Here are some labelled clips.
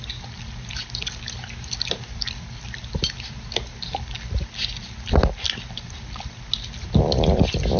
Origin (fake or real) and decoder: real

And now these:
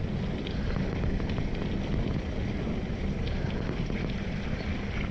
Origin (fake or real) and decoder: real